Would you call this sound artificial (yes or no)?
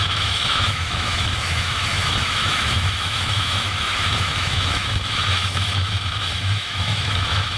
yes